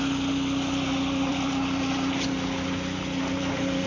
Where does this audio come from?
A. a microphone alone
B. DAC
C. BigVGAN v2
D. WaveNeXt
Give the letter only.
A